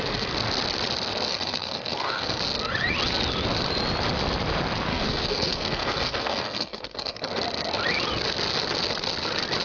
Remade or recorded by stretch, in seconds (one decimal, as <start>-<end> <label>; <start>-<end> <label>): 0.0-1.3 recorded; 1.3-2.4 remade; 2.4-4.9 recorded; 4.9-7.3 remade; 7.3-9.6 recorded